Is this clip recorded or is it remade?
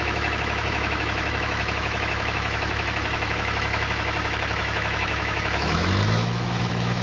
remade